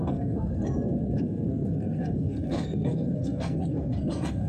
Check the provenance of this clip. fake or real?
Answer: fake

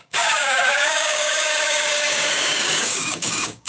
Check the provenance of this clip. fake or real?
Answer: fake